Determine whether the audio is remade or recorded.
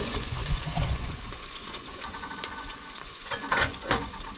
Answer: remade